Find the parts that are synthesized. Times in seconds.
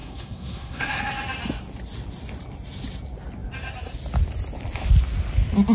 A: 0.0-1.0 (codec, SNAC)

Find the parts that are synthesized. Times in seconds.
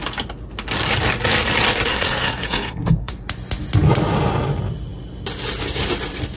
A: 1.9-3.1 (codec, SNAC)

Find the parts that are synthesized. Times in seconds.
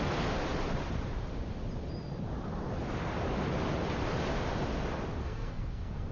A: 5.2-6.1 (codec, SNAC)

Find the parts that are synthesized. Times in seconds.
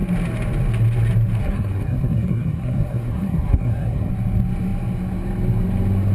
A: 1.4-4.1 (codec, SNAC)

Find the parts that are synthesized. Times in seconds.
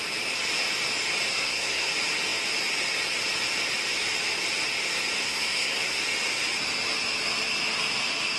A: 1.3-1.9 (codec, SNAC); 5.2-6.0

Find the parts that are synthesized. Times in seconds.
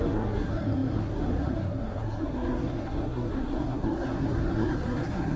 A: 0.0-5.4 (codec, SNAC)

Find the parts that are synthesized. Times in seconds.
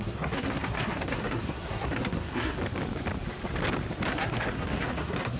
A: 0.0-2.6 (codec, SNAC); 4.1-5.4